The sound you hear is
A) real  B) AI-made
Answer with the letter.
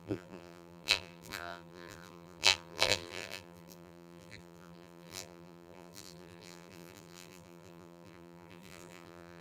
B